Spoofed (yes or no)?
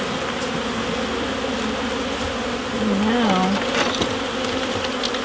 no